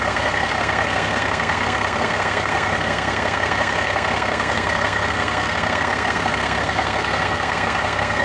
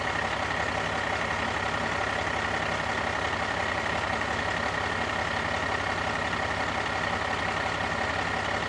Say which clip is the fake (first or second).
first